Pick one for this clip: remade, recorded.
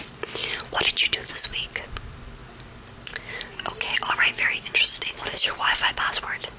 recorded